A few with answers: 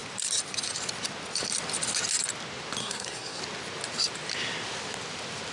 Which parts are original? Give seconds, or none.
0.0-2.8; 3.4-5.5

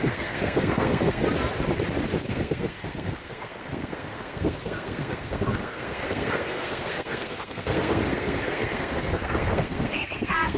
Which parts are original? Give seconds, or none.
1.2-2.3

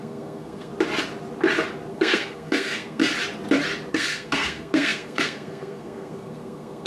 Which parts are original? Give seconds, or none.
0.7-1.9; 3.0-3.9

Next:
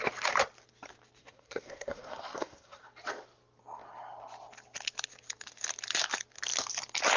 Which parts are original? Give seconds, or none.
0.0-1.2; 2.8-7.2

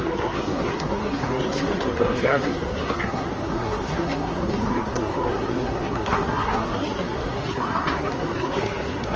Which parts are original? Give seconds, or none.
none